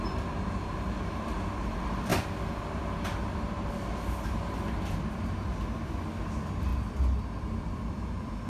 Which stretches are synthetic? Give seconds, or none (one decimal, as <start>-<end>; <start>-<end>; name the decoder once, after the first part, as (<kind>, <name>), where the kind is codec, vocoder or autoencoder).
6.7-8.5 (vocoder, BigVGAN v2)

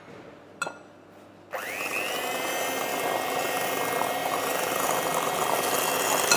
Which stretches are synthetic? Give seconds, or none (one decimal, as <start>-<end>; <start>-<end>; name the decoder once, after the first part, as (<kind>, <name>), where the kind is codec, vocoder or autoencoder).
2.9-3.4 (vocoder, BigVGAN v2); 4.2-5.8

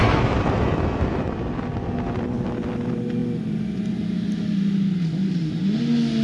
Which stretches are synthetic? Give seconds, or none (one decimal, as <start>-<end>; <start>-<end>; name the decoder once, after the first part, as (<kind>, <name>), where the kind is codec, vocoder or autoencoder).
0.0-0.5 (vocoder, BigVGAN v2)

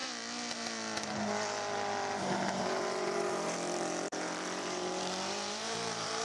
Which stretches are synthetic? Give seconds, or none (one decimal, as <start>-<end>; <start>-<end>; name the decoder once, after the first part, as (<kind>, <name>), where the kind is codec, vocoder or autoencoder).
2.6-6.2 (vocoder, BigVGAN v2)

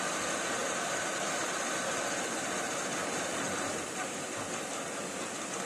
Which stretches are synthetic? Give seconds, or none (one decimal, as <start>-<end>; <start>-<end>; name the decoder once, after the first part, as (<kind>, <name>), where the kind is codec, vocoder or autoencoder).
0.6-2.0 (vocoder, BigVGAN v2); 3.0-4.4